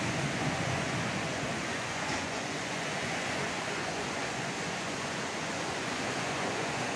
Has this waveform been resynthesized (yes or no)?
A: yes